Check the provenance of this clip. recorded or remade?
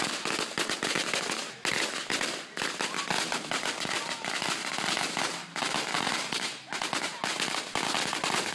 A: recorded